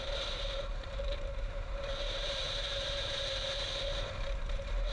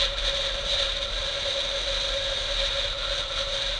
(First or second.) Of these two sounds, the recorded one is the second